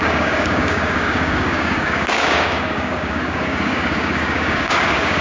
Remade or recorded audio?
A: remade